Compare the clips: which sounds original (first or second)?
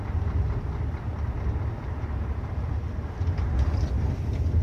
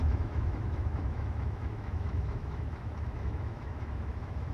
first